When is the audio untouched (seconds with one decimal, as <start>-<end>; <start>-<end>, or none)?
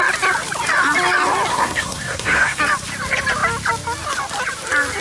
0.0-1.5; 2.6-5.0